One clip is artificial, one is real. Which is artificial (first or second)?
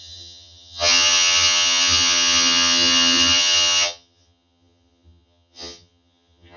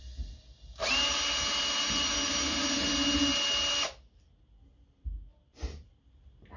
first